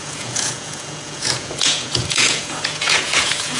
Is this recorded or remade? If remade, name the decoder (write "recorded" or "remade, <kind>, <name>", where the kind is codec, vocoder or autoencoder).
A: remade, vocoder, Vocos